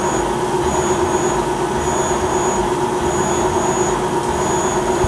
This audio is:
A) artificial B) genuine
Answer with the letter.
B